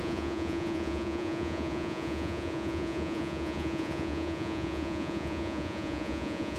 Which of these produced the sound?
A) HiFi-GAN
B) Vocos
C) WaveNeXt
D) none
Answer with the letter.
B